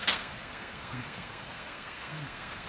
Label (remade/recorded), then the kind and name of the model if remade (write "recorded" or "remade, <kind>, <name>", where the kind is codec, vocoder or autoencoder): remade, codec, SNAC